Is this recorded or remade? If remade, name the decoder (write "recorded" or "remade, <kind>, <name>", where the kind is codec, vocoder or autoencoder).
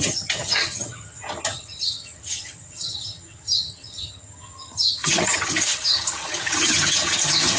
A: remade, vocoder, HiFi-GAN